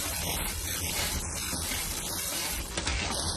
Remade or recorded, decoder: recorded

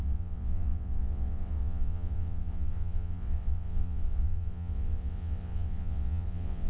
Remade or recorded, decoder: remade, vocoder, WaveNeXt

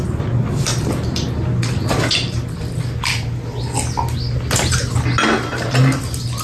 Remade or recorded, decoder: recorded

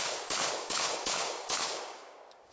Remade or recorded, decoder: remade, codec, DAC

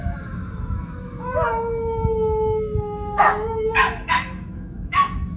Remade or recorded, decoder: remade, autoencoder, DAC-VAE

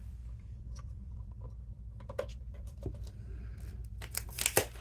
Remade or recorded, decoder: remade, vocoder, BigVGAN v2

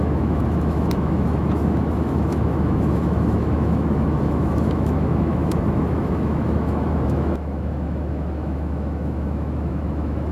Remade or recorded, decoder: remade, autoencoder, DAC-VAE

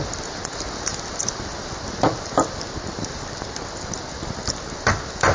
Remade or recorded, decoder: recorded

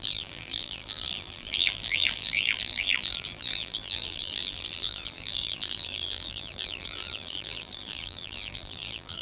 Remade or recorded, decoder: remade, vocoder, BigVGAN v2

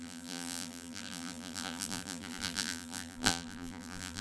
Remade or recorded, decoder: remade, vocoder, BigVGAN v2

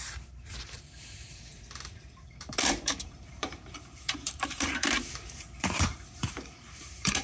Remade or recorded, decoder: remade, vocoder, BigVGAN v2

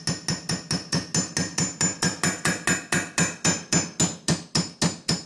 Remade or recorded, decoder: recorded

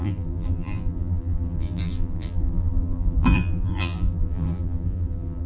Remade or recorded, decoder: remade, vocoder, BigVGAN v2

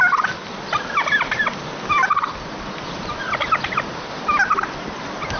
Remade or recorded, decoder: recorded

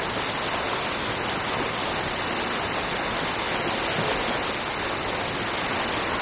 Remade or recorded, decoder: recorded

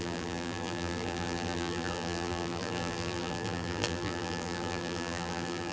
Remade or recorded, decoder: remade, vocoder, BigVGAN v2